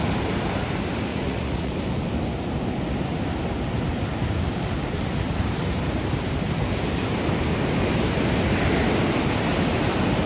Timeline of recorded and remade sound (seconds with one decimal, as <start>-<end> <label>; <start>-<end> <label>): 0.0-1.1 recorded; 1.1-1.7 remade; 1.7-10.3 recorded